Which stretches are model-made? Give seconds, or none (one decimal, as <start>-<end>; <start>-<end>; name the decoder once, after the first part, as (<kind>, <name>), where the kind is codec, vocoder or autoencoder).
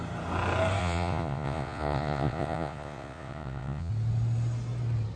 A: 0.8-3.9 (vocoder, Vocos)